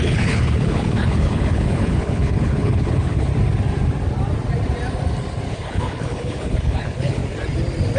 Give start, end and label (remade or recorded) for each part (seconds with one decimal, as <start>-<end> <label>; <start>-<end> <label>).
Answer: 0.0-3.3 remade; 3.3-5.5 recorded; 5.5-7.2 remade; 7.2-8.0 recorded